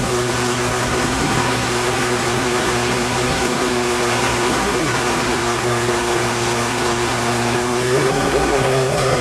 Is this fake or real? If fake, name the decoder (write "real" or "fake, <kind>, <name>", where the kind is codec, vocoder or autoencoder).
fake, codec, SNAC